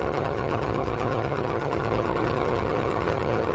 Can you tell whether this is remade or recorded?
remade